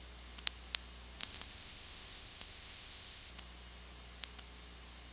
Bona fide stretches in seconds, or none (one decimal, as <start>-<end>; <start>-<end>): 0.0-1.2; 3.3-5.1